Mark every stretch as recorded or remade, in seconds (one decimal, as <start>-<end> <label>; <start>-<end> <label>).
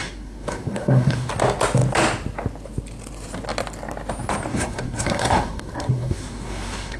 0.0-1.3 remade; 1.3-4.5 recorded; 4.5-7.0 remade